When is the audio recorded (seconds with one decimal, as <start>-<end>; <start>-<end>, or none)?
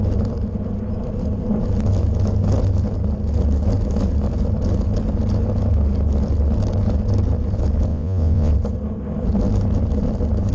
0.0-7.9; 8.5-10.5